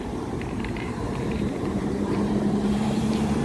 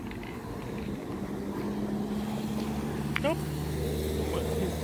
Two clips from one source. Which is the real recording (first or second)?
second